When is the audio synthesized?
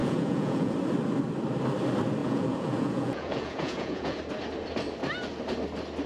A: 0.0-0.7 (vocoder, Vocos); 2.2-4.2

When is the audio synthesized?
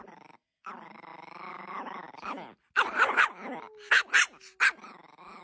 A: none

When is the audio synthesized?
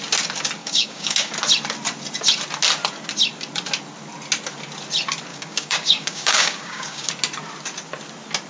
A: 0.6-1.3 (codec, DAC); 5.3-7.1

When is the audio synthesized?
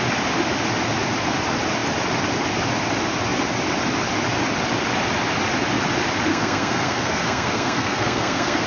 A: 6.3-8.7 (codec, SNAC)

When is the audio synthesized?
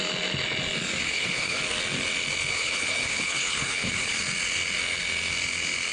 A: 1.0-1.6 (codec, HILCodec); 2.5-4.2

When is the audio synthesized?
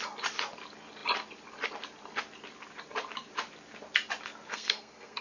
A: 4.5-5.2 (codec, SNAC)